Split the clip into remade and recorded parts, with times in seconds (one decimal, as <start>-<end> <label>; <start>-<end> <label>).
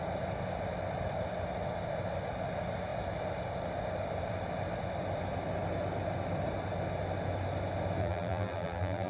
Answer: 0.0-8.0 recorded; 8.0-9.1 remade